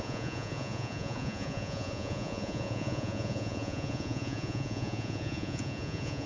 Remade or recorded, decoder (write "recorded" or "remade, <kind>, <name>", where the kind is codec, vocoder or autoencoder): remade, vocoder, Vocos